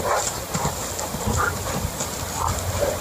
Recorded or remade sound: recorded